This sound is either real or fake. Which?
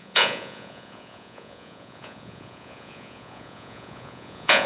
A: fake